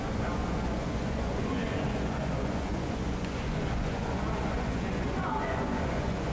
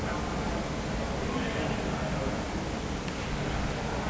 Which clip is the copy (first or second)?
first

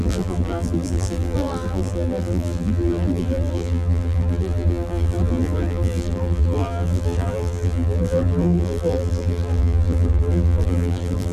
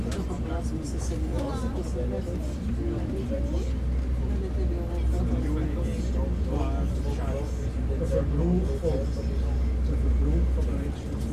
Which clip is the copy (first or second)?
first